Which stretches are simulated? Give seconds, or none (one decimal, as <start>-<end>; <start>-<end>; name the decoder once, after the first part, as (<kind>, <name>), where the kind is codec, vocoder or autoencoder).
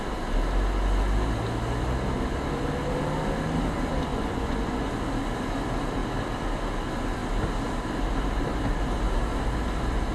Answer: 4.1-4.9 (vocoder, Vocos)